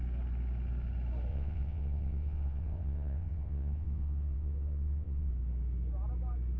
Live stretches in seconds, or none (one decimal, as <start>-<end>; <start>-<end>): 0.0-1.3; 5.3-6.6